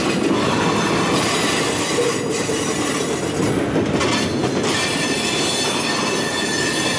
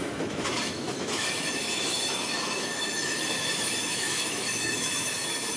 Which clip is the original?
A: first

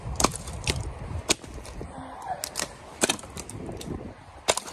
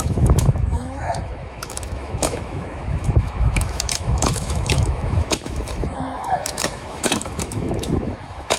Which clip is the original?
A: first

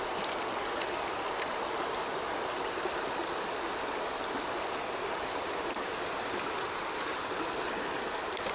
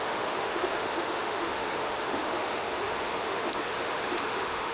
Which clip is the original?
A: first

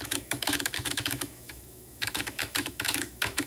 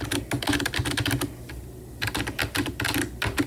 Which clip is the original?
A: second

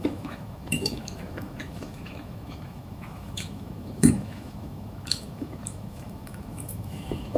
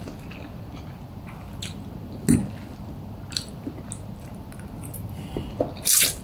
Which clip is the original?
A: second